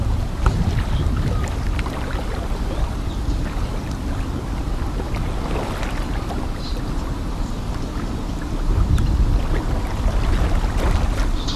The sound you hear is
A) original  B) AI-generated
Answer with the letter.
A